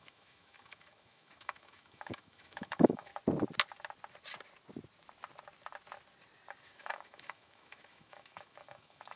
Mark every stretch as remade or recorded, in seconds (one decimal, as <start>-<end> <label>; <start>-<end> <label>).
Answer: 0.0-3.1 remade; 3.1-6.6 recorded; 6.6-9.2 remade